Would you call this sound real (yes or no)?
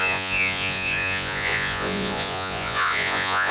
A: no